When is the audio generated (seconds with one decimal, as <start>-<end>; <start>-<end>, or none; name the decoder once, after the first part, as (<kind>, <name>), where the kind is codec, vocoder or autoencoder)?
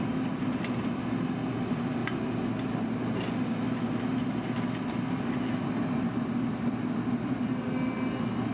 none